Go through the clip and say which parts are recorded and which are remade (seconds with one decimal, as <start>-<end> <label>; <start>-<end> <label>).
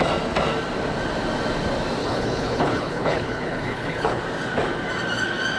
0.0-2.0 recorded; 2.0-4.2 remade; 4.2-5.6 recorded